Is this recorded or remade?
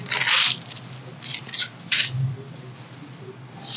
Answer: recorded